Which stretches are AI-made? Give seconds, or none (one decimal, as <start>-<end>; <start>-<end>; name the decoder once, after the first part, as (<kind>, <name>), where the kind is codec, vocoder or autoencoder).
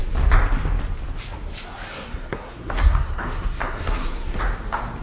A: 1.9-4.4 (codec, SNAC)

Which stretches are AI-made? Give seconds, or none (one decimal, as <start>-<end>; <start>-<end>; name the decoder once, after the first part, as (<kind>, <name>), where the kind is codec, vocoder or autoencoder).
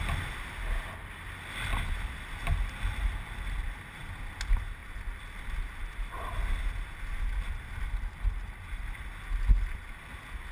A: none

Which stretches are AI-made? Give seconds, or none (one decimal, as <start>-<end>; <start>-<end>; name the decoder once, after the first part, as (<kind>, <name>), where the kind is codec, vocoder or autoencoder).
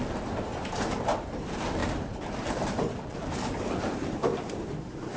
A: 0.0-0.5 (vocoder, BigVGAN v2); 1.0-4.3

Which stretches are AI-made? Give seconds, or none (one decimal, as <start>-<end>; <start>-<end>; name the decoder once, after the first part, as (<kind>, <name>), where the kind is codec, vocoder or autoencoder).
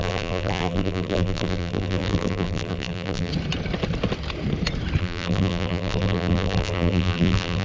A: 0.0-3.3 (vocoder, BigVGAN v2); 5.0-7.6